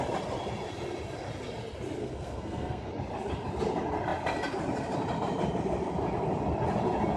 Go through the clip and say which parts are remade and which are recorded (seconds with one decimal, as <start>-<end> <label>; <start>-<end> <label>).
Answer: 0.0-2.0 recorded; 2.0-2.9 remade; 2.9-7.2 recorded